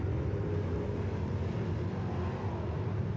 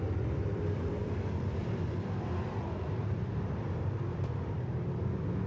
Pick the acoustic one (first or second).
first